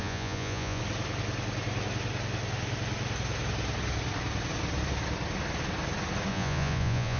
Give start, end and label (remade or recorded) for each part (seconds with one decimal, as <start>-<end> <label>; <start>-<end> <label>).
0.0-0.8 remade; 0.8-6.3 recorded; 6.3-7.2 remade